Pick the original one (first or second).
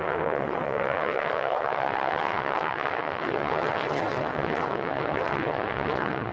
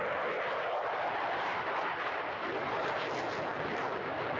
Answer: second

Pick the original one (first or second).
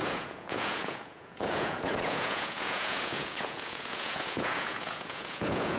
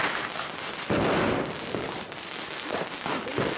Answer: second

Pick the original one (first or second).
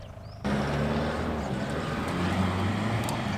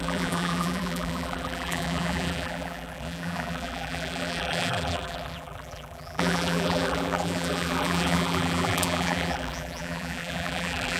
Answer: first